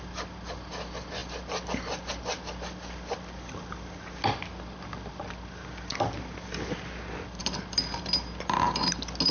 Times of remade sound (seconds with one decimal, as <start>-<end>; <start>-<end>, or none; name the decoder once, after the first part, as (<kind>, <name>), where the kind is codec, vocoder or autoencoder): none